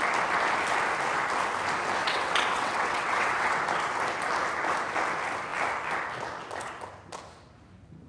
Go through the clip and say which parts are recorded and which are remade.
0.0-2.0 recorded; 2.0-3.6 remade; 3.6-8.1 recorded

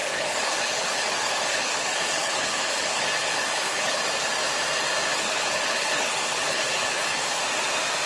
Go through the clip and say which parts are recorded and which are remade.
0.0-4.0 remade; 4.0-5.1 recorded; 5.1-7.4 remade; 7.4-8.1 recorded

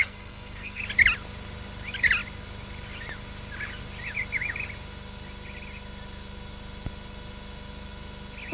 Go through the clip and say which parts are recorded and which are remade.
0.0-0.8 remade; 0.8-8.5 recorded